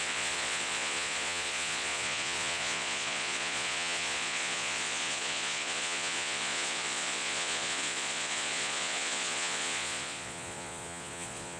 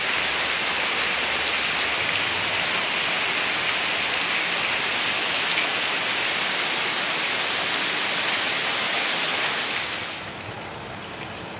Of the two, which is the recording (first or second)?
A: second